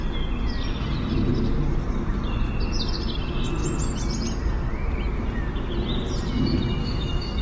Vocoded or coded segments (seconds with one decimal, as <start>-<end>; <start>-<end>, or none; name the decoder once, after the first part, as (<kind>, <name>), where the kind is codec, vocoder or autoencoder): 6.8-7.4 (autoencoder, DAC-VAE)